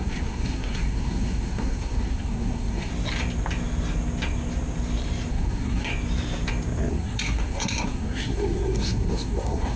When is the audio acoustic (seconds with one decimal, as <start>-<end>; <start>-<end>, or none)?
2.9-5.3; 5.9-6.9